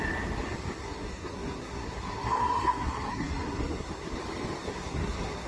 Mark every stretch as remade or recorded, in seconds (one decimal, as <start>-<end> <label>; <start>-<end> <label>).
0.0-0.8 recorded; 0.8-4.1 remade; 4.1-4.6 recorded; 4.6-5.5 remade